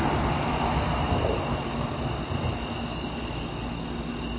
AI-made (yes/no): no